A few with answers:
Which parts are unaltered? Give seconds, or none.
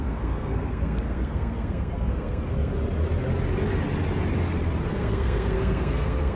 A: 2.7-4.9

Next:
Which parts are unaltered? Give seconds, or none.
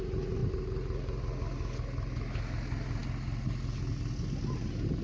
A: 0.0-5.0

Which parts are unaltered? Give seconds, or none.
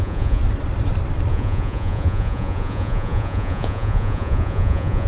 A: 0.4-1.3